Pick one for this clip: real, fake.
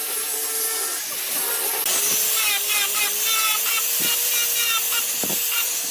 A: real